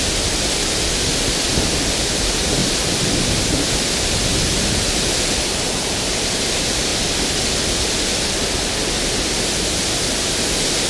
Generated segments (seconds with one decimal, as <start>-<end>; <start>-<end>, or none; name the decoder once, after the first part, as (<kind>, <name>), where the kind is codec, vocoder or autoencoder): none